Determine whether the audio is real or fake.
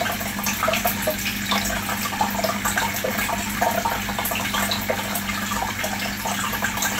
real